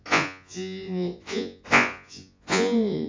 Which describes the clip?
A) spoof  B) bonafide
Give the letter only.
A